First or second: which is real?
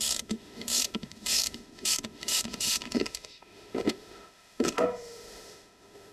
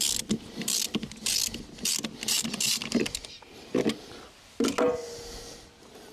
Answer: second